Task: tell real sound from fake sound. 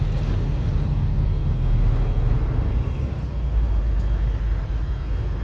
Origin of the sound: real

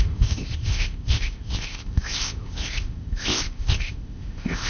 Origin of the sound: fake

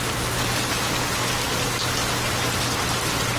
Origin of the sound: real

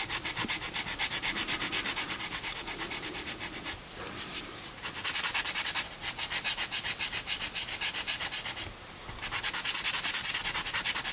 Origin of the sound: real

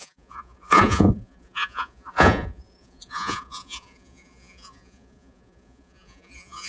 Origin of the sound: fake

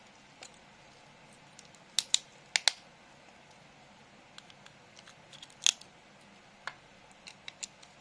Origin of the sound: real